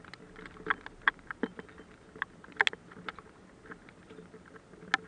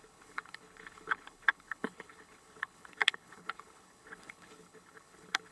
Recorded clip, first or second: first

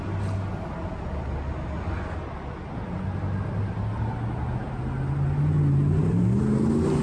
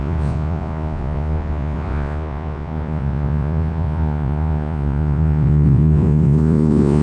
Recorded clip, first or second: first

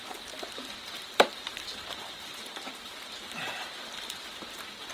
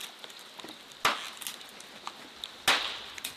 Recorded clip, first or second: second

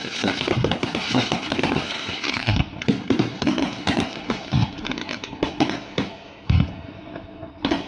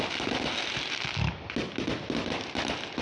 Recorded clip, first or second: second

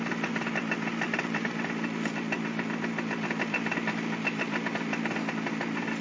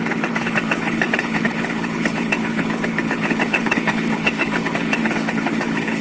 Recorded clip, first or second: first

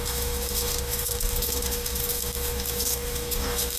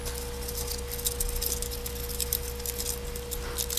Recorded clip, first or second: second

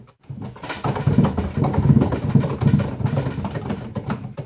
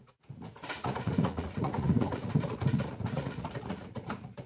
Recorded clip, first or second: first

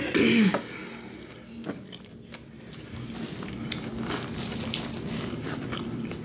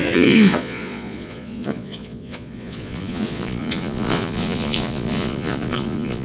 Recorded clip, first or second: first